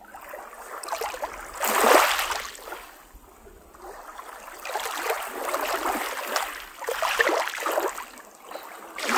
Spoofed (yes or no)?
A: no